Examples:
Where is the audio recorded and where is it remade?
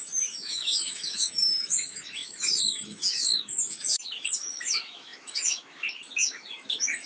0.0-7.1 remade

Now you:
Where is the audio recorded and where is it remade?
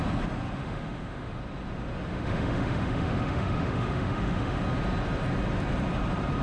0.0-0.6 recorded; 0.6-1.4 remade; 1.4-2.1 recorded; 2.1-4.6 remade; 4.6-6.4 recorded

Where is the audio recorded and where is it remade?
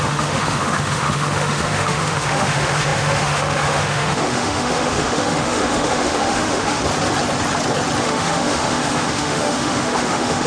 0.0-6.8 remade; 6.8-8.0 recorded; 8.0-10.5 remade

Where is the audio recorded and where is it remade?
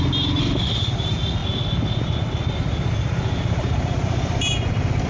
0.0-0.4 recorded; 0.4-0.9 remade; 0.9-5.1 recorded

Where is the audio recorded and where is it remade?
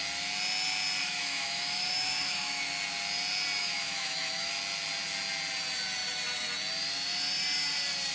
0.0-1.0 recorded; 1.0-2.7 remade; 2.7-3.6 recorded; 3.6-4.5 remade; 4.5-8.1 recorded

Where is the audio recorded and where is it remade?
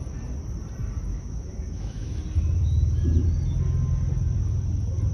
0.0-1.1 recorded; 1.1-2.2 remade; 2.2-5.1 recorded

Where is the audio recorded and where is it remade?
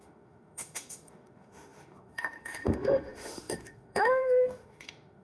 0.0-5.2 remade